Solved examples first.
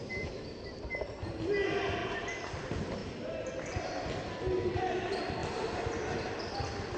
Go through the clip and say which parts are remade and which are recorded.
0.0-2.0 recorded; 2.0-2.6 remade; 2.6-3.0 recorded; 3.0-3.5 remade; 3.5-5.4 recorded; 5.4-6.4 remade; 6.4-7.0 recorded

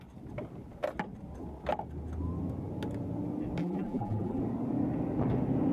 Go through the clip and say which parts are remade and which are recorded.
0.0-3.6 recorded; 3.6-4.4 remade; 4.4-5.7 recorded

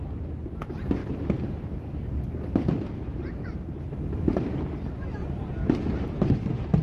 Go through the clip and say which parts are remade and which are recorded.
0.0-1.0 recorded; 1.0-1.6 remade; 1.6-3.1 recorded; 3.1-4.6 remade; 4.6-5.2 recorded; 5.2-6.3 remade; 6.3-6.8 recorded

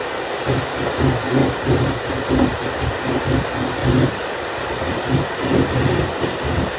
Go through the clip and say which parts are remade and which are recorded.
0.0-2.5 recorded; 2.5-3.1 remade; 3.1-3.8 recorded; 3.8-6.3 remade; 6.3-6.8 recorded

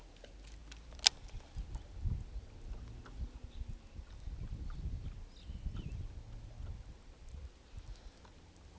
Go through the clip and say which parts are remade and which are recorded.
0.0-8.8 recorded